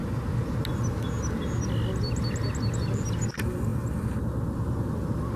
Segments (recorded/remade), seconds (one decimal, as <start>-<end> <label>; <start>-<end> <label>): 0.0-5.4 recorded